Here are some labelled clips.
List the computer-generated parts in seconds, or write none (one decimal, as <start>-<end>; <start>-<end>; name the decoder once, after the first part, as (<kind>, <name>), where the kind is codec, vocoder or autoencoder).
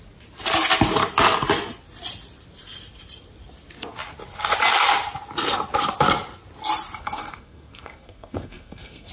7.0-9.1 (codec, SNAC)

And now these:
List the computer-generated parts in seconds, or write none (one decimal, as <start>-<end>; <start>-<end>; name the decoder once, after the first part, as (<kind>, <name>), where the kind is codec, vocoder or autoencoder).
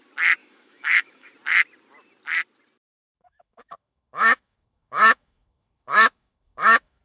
0.4-1.3 (autoencoder, DAC-VAE); 2.8-7.0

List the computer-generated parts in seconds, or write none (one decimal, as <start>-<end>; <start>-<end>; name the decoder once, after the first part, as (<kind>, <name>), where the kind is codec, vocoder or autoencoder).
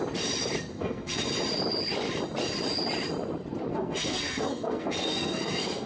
0.7-1.2 (codec, SNAC); 3.7-5.9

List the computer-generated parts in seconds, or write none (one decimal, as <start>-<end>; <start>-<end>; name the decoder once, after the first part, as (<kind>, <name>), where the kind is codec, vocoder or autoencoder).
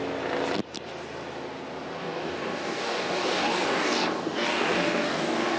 2.0-5.6 (codec, DAC)